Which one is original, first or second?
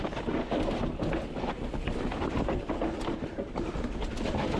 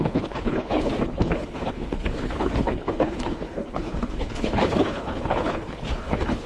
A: first